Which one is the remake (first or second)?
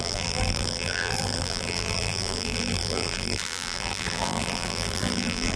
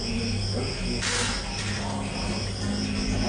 first